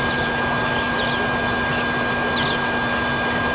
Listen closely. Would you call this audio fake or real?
real